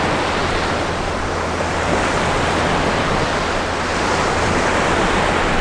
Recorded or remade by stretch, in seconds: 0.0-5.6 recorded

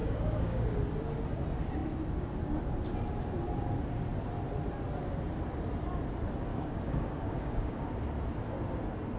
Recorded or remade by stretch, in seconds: 0.0-0.8 remade; 0.8-6.5 recorded; 6.5-7.9 remade; 7.9-9.2 recorded

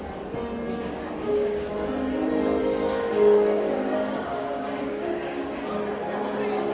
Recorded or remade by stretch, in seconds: 0.0-0.7 recorded; 0.7-1.7 remade; 1.7-2.6 recorded; 2.6-5.6 remade; 5.6-6.7 recorded

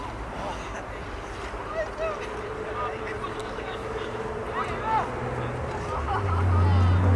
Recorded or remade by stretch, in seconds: 0.0-3.4 recorded; 3.4-4.4 remade; 4.4-7.2 recorded

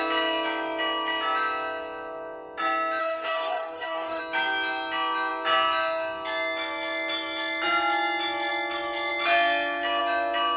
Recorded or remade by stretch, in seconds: 0.0-3.0 recorded; 3.0-4.2 remade; 4.2-10.6 recorded

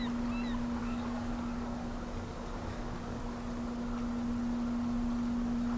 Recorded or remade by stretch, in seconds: 0.0-0.8 recorded; 0.8-3.2 remade; 3.2-5.8 recorded

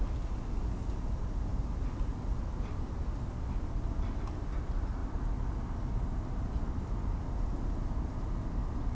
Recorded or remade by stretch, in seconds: 0.0-8.9 recorded